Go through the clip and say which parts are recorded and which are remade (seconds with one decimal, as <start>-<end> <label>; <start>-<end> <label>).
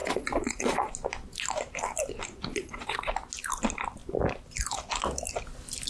0.0-0.9 remade; 0.9-2.5 recorded; 2.5-3.1 remade; 3.1-5.9 recorded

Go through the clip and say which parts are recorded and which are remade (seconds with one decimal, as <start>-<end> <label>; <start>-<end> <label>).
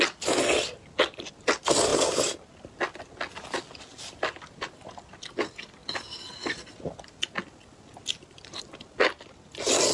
0.0-9.9 recorded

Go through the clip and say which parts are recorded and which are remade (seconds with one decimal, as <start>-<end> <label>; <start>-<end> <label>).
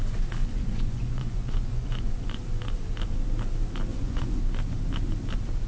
0.0-0.4 recorded; 0.4-2.4 remade; 2.4-3.9 recorded; 3.9-4.4 remade; 4.4-5.7 recorded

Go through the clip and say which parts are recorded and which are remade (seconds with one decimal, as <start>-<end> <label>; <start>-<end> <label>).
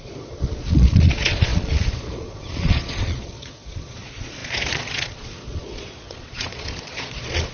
0.0-7.5 remade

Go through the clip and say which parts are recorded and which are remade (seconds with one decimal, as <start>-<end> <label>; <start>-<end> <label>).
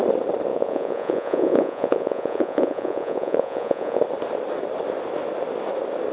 0.0-0.5 recorded; 0.5-4.0 remade; 4.0-6.1 recorded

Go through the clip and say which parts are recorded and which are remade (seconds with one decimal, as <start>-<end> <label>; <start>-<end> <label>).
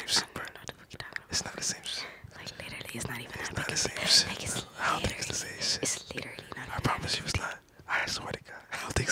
0.0-4.2 recorded; 4.2-4.9 remade; 4.9-5.5 recorded; 5.5-7.3 remade; 7.3-9.1 recorded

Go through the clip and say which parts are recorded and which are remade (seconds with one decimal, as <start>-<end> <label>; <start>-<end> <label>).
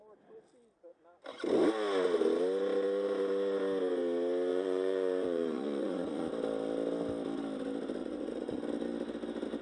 0.0-4.5 recorded; 4.5-6.3 remade; 6.3-8.0 recorded; 8.0-8.6 remade; 8.6-9.6 recorded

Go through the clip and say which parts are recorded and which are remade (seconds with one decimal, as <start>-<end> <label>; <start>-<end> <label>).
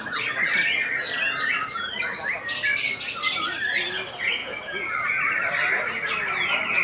0.0-4.4 recorded; 4.4-4.9 remade; 4.9-6.8 recorded